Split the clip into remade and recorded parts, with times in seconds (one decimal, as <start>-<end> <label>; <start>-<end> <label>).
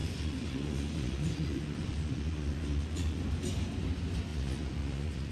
0.0-3.2 remade; 3.2-4.3 recorded; 4.3-5.3 remade